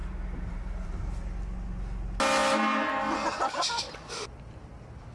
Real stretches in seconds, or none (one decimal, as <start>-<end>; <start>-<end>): 1.3-5.1